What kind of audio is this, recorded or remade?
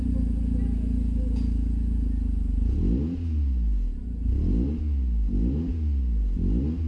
recorded